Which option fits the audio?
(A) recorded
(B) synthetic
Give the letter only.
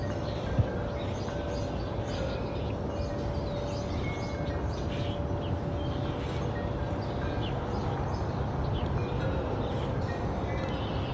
A